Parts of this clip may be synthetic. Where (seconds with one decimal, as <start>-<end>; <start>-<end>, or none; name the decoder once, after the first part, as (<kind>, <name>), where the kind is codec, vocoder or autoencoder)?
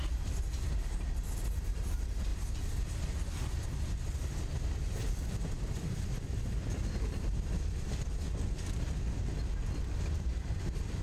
none